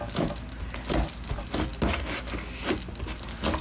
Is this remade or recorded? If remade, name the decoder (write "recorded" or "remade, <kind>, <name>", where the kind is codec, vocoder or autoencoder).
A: recorded